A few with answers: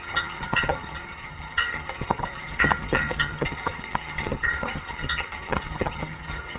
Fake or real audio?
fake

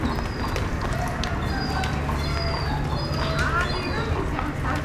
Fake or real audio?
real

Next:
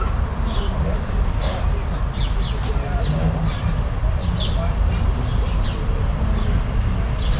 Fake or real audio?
real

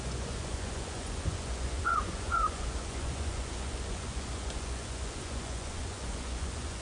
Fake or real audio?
fake